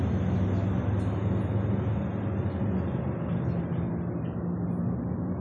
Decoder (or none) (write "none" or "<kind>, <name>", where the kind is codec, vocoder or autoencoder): none